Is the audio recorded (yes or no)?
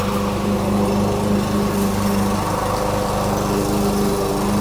yes